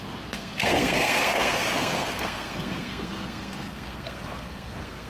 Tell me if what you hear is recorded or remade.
remade